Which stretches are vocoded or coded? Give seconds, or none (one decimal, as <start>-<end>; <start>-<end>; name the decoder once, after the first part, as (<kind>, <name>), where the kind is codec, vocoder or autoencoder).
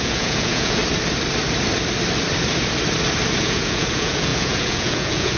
0.0-0.8 (vocoder, Vocos); 3.4-5.4